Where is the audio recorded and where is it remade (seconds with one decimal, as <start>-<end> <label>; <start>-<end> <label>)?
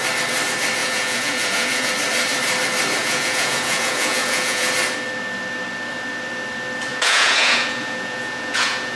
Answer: 0.0-0.8 recorded; 0.8-1.9 remade; 1.9-3.0 recorded; 3.0-4.7 remade; 4.7-6.9 recorded; 6.9-9.0 remade